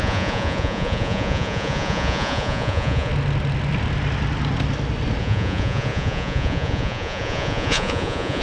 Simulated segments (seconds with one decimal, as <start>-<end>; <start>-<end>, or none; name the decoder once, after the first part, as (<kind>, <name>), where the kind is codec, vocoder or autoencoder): 0.0-3.1 (vocoder, Vocos); 5.2-8.4